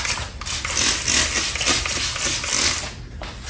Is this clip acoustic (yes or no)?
yes